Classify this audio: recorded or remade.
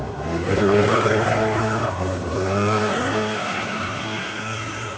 remade